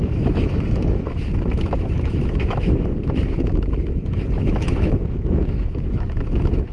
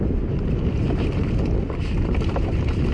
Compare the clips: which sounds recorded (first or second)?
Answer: second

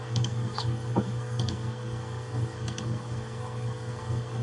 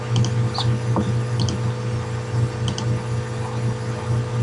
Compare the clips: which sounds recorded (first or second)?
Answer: second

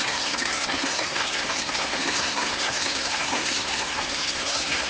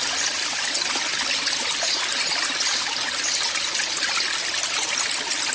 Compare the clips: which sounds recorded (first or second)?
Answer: second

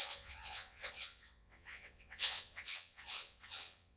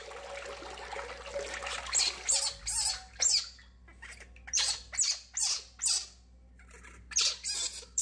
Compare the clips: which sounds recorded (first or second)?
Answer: second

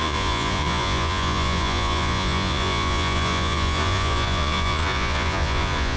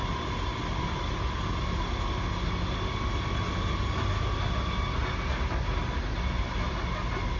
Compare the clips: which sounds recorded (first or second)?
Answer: second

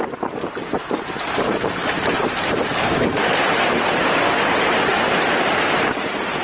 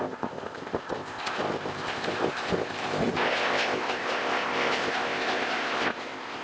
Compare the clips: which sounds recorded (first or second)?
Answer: first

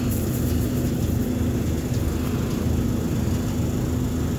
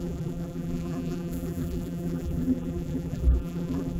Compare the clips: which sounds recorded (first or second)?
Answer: first